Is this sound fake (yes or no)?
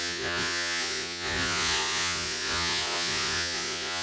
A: yes